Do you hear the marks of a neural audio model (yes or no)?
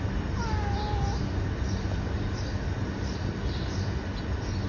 no